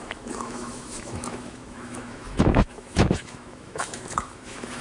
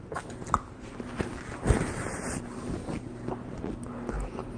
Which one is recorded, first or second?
second